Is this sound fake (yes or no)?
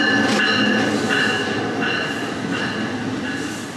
no